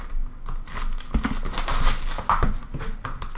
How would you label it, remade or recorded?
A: recorded